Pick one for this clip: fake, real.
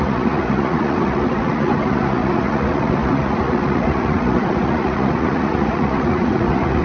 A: fake